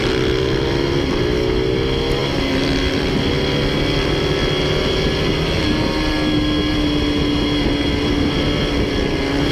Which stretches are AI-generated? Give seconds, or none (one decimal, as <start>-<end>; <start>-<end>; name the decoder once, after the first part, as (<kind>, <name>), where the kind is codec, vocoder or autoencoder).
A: none

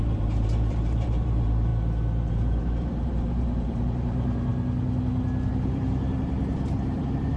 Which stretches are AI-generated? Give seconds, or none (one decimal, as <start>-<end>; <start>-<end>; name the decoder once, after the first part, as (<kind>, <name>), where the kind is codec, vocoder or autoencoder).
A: 0.0-1.7 (vocoder, BigVGAN v2); 2.3-4.5; 5.5-7.4